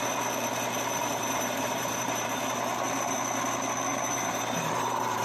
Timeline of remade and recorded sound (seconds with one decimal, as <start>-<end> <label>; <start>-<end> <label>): 0.0-1.0 recorded; 1.0-2.4 remade; 2.4-3.9 recorded; 3.9-5.2 remade